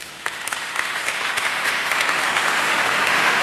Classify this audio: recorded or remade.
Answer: remade